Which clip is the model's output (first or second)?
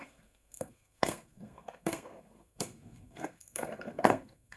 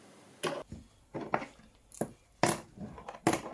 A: first